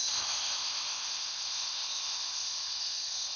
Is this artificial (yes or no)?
yes